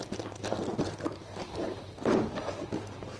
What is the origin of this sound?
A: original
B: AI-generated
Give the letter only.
B